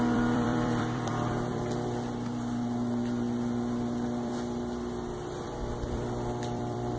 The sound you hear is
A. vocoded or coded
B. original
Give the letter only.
A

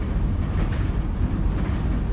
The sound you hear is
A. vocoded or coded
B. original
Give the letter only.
B